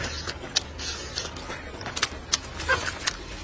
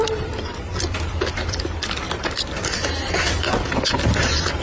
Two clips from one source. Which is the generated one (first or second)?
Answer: second